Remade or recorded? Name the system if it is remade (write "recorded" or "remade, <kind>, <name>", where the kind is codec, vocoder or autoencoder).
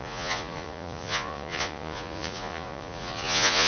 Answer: remade, vocoder, Vocos